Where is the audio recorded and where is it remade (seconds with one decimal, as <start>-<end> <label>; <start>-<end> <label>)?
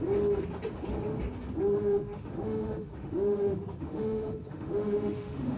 0.0-1.8 recorded; 1.8-5.6 remade